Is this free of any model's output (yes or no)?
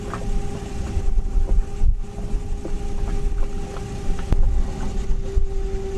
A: yes